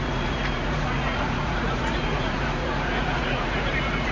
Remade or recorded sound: remade